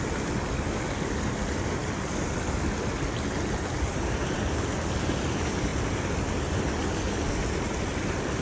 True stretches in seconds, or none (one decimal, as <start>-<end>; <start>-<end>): 0.0-8.4